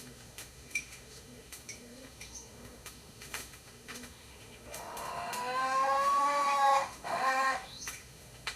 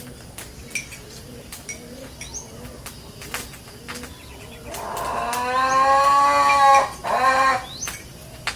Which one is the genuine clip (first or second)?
second